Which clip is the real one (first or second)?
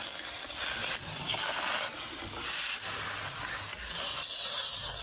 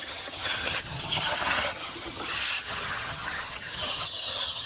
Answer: first